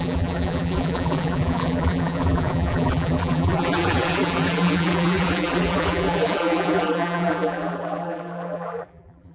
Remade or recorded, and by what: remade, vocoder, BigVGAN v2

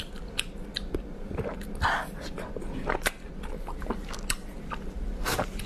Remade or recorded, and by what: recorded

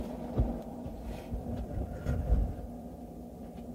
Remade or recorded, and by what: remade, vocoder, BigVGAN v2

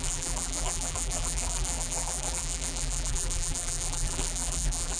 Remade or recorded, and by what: remade, vocoder, BigVGAN v2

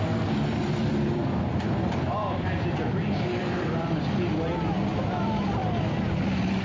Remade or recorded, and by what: remade, vocoder, BigVGAN v2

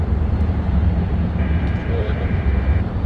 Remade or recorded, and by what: remade, vocoder, BigVGAN v2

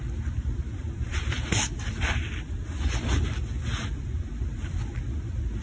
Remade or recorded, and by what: remade, vocoder, BigVGAN v2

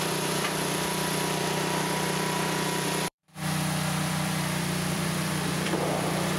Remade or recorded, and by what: remade, vocoder, BigVGAN v2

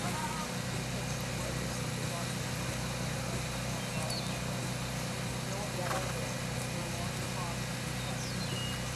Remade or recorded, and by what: recorded